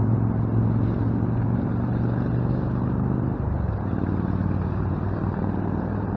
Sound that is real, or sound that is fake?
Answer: fake